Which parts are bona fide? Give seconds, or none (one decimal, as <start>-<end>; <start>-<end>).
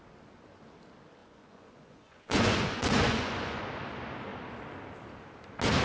0.0-1.2; 3.6-5.8